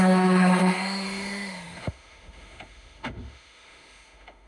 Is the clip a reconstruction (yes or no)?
yes